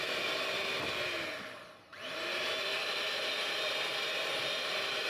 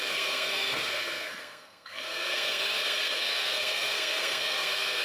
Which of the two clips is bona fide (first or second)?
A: first